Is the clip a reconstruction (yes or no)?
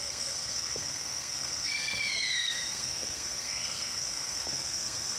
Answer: yes